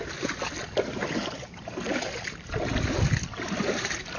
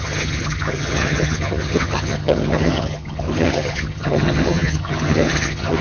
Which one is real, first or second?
first